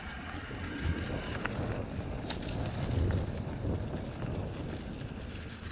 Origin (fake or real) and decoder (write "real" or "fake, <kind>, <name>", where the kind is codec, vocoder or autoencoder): real